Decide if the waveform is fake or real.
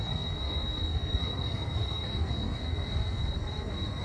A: fake